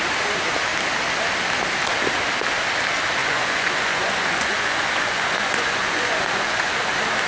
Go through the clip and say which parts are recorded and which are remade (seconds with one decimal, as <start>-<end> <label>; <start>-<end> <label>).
0.0-3.2 recorded; 3.2-6.7 remade; 6.7-7.3 recorded